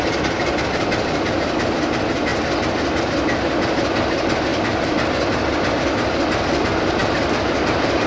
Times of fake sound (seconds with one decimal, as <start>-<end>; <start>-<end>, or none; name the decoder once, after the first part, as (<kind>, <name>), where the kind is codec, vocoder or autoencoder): none